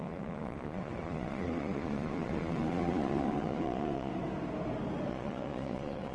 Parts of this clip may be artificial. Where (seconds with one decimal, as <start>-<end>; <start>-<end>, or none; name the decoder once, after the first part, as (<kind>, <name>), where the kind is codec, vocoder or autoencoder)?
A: 0.0-4.1 (vocoder, Vocos); 5.1-6.1